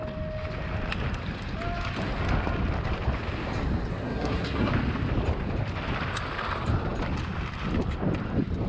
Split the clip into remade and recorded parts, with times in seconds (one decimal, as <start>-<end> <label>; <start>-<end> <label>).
0.0-3.9 recorded; 3.9-4.7 remade; 4.7-8.7 recorded